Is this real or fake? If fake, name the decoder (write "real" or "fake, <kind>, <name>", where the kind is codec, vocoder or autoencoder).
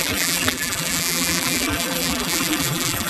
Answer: fake, vocoder, BigVGAN v2